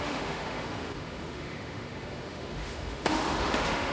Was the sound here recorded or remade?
remade